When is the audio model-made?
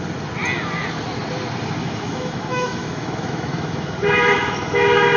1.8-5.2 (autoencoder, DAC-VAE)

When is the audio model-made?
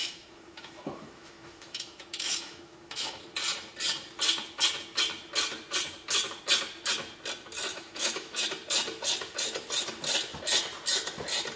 0.0-3.2 (autoencoder, DAC-VAE); 7.7-8.4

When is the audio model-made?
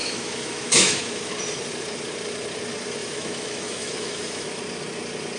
0.0-1.3 (autoencoder, DAC-VAE); 3.0-4.6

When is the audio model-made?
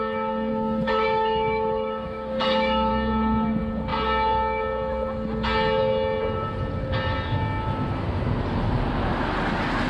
0.5-2.9 (autoencoder, DAC-VAE)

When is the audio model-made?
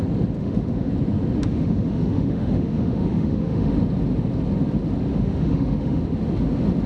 0.4-0.9 (autoencoder, DAC-VAE); 1.4-3.7; 5.1-6.0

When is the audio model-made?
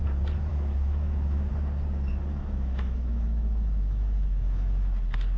0.5-1.5 (autoencoder, DAC-VAE); 2.1-5.4